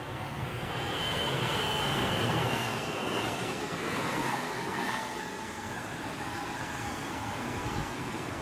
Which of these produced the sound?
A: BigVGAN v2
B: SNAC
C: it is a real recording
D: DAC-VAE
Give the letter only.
B